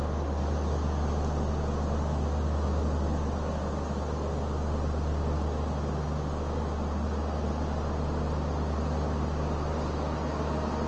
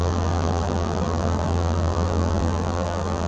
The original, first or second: first